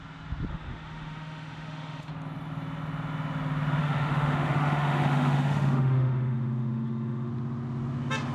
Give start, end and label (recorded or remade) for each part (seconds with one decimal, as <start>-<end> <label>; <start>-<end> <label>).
0.0-0.5 recorded; 0.5-2.1 remade; 2.1-3.8 recorded; 3.8-7.3 remade; 7.3-8.3 recorded